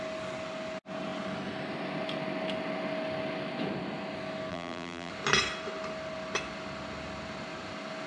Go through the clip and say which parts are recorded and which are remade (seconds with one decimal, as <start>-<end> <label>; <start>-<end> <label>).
0.0-4.5 recorded; 4.5-5.1 remade; 5.1-8.1 recorded